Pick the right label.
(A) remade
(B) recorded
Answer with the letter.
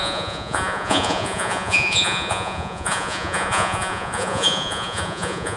A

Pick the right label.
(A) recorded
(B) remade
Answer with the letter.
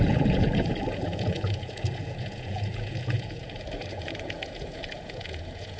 B